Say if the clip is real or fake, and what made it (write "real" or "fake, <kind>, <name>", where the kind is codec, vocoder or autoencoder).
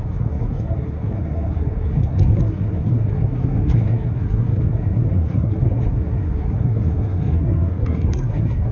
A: fake, codec, SNAC